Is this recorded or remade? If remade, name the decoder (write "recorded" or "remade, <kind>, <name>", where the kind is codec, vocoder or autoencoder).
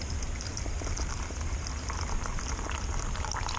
recorded